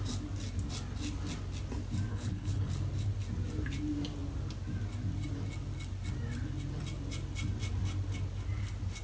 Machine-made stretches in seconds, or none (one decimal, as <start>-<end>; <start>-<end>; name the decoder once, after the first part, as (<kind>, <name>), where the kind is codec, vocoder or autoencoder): 2.1-2.7 (codec, HILCodec)